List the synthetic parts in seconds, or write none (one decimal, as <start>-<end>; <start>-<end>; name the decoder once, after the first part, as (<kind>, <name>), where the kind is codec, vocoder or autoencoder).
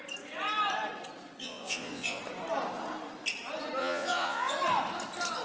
1.4-2.2 (vocoder, Vocos); 3.8-4.5